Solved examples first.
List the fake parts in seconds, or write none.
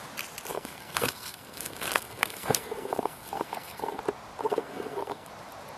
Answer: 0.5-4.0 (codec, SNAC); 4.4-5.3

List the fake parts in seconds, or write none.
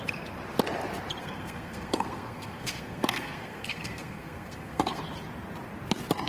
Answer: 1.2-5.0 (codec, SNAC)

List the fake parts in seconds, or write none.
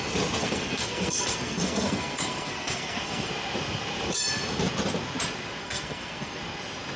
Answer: 0.4-3.3 (codec, SNAC); 5.6-6.4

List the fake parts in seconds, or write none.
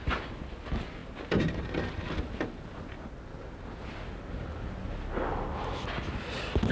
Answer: none